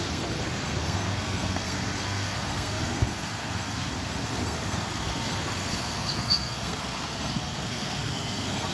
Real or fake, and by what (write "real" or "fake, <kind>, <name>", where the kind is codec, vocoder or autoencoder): fake, codec, SNAC